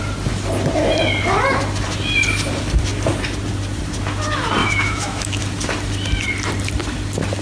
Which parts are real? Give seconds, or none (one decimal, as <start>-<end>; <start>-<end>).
0.0-4.6; 5.4-7.4